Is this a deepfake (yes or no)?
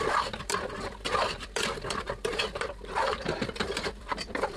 yes